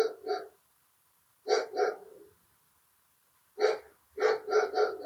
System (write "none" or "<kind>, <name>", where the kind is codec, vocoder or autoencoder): none